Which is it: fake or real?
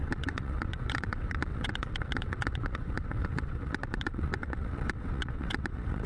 fake